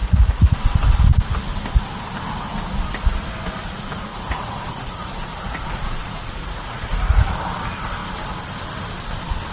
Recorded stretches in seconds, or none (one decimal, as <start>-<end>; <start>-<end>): 0.5-4.1; 7.2-9.5